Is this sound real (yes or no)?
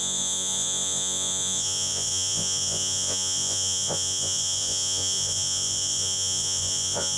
no